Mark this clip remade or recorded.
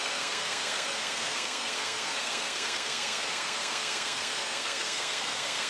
remade